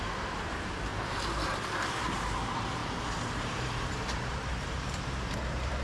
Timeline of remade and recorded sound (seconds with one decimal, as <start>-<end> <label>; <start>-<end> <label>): 0.0-2.8 remade; 2.8-3.3 recorded; 3.3-5.8 remade